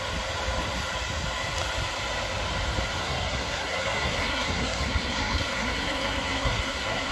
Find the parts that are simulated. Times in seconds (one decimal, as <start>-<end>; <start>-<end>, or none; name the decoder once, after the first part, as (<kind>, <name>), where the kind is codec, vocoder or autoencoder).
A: 3.0-7.1 (codec, SNAC)